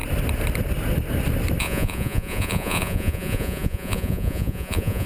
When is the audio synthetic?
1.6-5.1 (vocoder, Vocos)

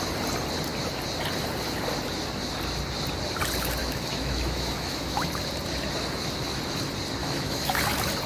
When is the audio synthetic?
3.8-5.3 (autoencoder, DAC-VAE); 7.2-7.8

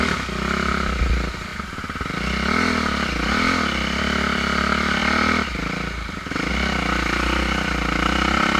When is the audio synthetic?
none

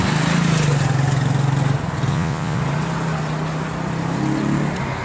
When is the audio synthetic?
2.1-2.6 (vocoder, Vocos)

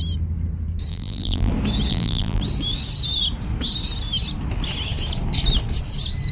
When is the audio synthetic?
0.9-1.5 (vocoder, BigVGAN v2); 1.9-2.4

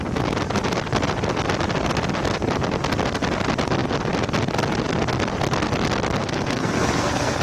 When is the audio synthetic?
6.2-7.4 (codec, SNAC)